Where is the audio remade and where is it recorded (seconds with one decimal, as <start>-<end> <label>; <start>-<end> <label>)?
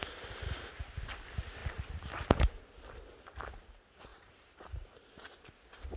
0.0-4.1 recorded; 4.1-5.0 remade; 5.0-6.0 recorded